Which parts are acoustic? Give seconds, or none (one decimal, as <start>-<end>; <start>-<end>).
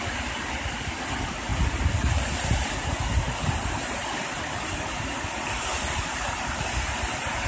0.0-7.5